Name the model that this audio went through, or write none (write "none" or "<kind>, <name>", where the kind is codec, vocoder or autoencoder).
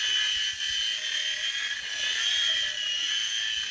none